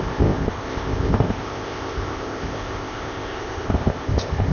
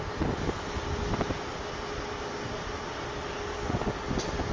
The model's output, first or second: first